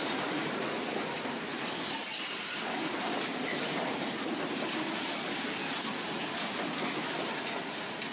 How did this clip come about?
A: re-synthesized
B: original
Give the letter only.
B